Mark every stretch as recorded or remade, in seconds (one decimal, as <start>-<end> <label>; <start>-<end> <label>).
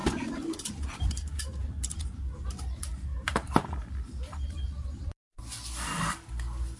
0.0-1.6 recorded; 1.6-2.5 remade; 2.5-3.1 recorded; 3.1-6.3 remade; 6.3-6.8 recorded